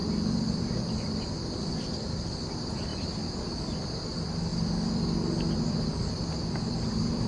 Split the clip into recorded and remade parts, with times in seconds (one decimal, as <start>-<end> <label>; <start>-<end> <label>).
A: 0.0-2.9 recorded; 2.9-4.0 remade; 4.0-7.3 recorded